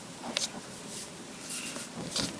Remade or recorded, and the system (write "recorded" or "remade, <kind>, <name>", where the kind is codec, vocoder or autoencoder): recorded